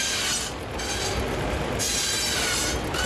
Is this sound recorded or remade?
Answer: recorded